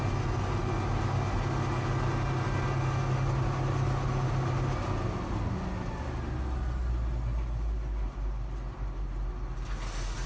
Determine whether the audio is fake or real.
real